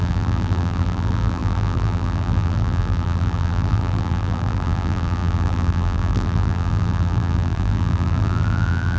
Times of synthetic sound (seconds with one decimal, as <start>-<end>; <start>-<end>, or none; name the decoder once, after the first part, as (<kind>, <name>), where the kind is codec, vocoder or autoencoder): 0.0-9.0 (vocoder, BigVGAN v2)